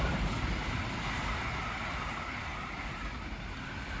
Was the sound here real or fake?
real